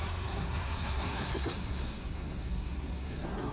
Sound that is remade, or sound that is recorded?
remade